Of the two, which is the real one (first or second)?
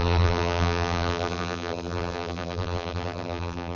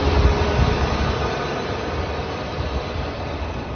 second